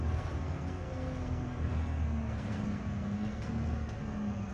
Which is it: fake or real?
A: fake